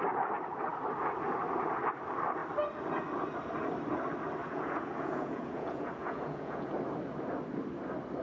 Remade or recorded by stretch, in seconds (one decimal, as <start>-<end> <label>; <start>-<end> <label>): 0.0-4.4 recorded; 4.4-6.7 remade; 6.7-8.2 recorded